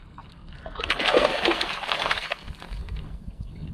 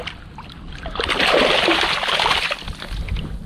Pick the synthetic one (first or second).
first